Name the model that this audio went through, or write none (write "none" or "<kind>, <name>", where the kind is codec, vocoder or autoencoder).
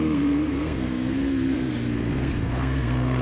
codec, SNAC